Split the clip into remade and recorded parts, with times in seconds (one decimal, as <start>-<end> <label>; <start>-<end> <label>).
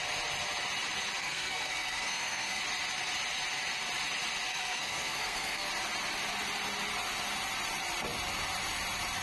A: 0.0-1.2 recorded; 1.2-2.6 remade; 2.6-4.5 recorded; 4.5-5.7 remade; 5.7-9.2 recorded